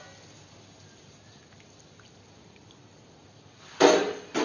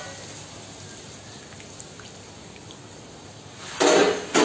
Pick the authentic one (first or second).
second